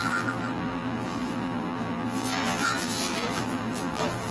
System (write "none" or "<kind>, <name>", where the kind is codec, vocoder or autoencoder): vocoder, BigVGAN v2